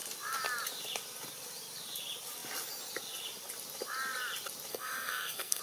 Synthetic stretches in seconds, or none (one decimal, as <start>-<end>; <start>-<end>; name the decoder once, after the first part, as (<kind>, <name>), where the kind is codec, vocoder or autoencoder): 4.7-5.6 (codec, SNAC)